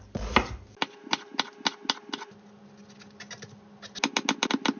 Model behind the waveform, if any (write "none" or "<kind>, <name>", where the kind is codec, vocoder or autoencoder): none